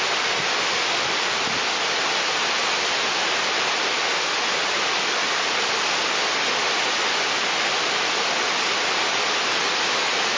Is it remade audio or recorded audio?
recorded